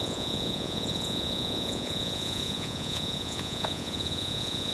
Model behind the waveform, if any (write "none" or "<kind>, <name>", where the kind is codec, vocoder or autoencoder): vocoder, Vocos